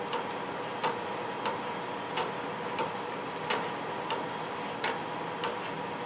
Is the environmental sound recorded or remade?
recorded